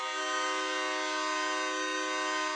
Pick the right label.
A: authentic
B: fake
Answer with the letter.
A